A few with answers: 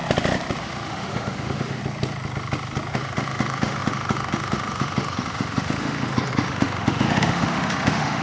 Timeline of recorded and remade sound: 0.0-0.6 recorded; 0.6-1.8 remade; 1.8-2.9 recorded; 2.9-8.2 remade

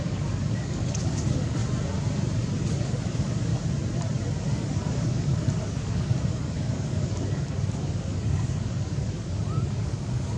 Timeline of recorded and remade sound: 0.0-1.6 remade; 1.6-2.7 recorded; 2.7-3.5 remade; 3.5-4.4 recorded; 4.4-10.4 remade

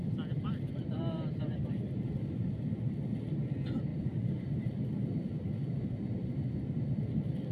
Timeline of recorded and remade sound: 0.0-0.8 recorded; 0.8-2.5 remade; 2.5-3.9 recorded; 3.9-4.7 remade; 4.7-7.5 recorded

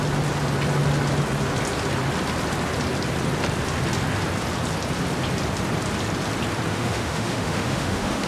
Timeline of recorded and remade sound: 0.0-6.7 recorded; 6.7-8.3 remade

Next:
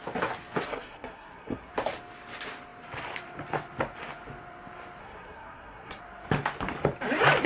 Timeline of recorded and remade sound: 0.0-0.7 recorded; 0.7-1.7 remade; 1.7-5.0 recorded; 5.0-6.0 remade; 6.0-7.5 recorded

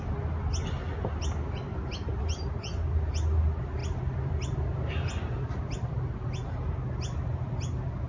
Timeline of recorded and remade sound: 0.0-8.1 recorded

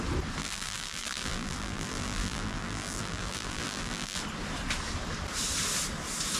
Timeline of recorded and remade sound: 0.0-0.4 recorded; 0.4-4.2 remade; 4.2-6.4 recorded

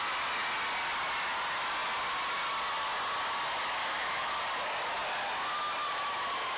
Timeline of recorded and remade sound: 0.0-3.8 recorded; 3.8-4.4 remade; 4.4-6.6 recorded